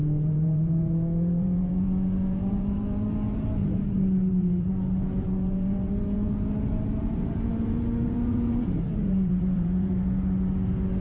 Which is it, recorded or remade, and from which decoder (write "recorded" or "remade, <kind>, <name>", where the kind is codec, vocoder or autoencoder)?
remade, vocoder, Vocos